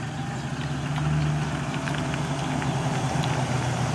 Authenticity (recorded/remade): recorded